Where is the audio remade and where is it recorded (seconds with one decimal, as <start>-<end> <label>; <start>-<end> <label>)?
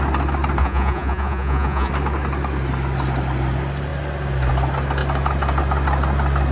0.0-0.6 recorded; 0.6-1.9 remade; 1.9-6.5 recorded